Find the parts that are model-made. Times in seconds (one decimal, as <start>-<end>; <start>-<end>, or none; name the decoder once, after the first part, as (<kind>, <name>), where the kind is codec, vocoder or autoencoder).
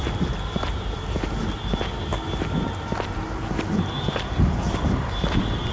none